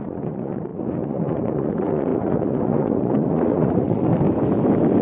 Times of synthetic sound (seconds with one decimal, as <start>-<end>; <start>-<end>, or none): 0.0-4.1